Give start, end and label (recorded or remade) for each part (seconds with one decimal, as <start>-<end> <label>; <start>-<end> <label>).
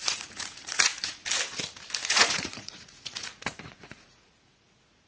0.0-1.2 remade; 1.2-2.1 recorded; 2.1-5.1 remade